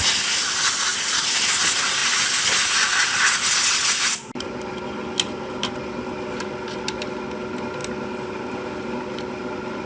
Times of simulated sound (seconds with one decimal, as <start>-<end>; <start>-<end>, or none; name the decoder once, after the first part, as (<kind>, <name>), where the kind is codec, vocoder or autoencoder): none